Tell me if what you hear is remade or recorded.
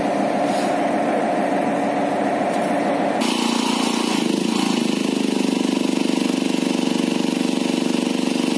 recorded